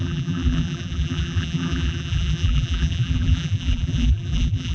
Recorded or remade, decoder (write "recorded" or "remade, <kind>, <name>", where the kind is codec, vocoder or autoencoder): remade, vocoder, BigVGAN v2